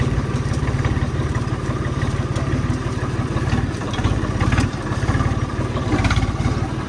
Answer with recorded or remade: remade